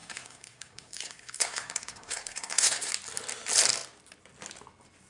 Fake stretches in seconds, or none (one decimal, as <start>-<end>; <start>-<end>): 0.0-2.9